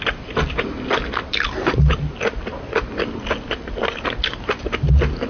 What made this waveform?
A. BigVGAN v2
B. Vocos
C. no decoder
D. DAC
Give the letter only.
C